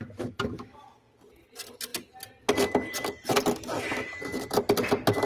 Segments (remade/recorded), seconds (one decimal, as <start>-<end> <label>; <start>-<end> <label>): 0.0-5.3 recorded